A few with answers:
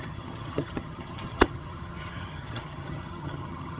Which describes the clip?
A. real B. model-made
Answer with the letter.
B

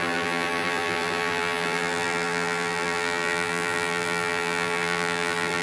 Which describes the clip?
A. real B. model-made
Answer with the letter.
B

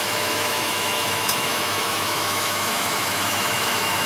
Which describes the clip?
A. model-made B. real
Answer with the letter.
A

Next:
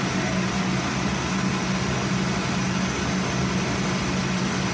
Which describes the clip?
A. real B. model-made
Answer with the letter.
A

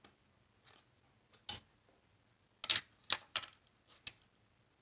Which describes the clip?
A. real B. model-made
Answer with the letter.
A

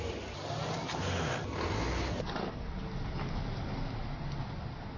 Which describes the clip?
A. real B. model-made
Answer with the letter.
A